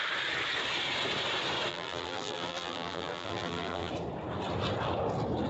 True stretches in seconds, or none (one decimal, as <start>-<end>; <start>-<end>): 0.0-1.7; 3.9-5.5